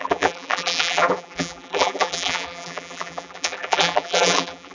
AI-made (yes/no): yes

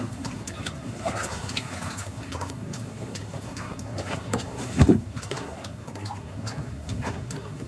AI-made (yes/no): yes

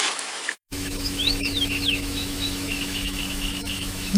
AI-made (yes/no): yes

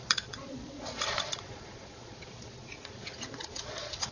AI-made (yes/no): yes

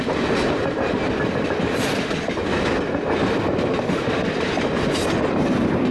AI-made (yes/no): no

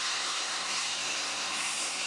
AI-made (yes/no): yes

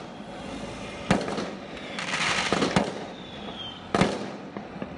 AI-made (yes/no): no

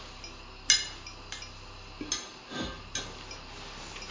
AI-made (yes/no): no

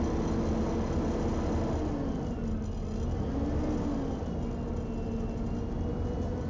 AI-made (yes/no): no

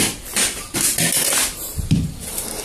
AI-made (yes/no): yes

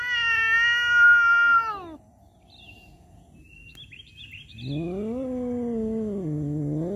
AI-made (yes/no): no